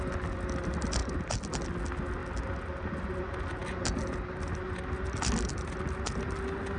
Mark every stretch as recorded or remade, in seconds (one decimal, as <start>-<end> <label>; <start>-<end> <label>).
0.0-6.8 recorded